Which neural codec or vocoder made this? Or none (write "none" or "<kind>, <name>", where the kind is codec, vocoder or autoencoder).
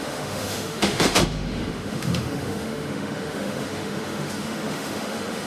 autoencoder, DAC-VAE